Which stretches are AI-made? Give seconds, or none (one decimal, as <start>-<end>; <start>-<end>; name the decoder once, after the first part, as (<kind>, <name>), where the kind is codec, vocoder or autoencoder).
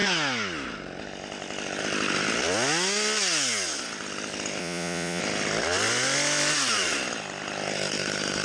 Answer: 4.6-5.2 (vocoder, Vocos)